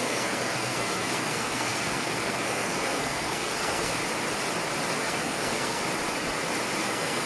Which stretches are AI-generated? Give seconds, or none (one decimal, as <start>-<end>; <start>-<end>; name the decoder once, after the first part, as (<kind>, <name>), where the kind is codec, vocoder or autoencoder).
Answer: 0.0-4.0 (codec, SNAC); 5.0-5.8; 6.8-7.3